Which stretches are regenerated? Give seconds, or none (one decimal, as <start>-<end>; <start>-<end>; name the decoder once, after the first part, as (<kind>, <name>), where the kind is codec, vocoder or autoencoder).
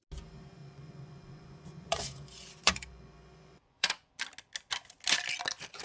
0.6-4.1 (vocoder, Vocos)